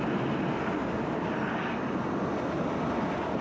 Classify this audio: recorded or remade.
recorded